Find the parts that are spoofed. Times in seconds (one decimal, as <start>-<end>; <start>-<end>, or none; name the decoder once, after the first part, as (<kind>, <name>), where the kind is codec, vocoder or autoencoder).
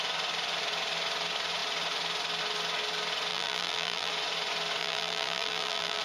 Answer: 3.3-4.1 (vocoder, BigVGAN v2); 4.8-6.0